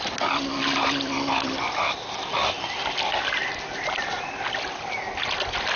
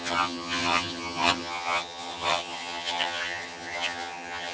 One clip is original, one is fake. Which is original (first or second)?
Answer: first